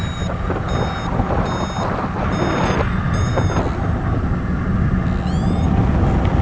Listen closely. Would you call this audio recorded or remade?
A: recorded